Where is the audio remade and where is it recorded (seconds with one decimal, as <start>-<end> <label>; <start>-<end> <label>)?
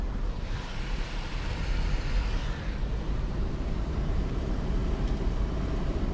0.0-1.3 remade; 1.3-3.3 recorded; 3.3-4.8 remade; 4.8-6.1 recorded